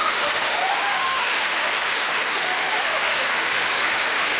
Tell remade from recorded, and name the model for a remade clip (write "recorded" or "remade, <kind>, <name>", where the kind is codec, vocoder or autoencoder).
remade, autoencoder, DAC-VAE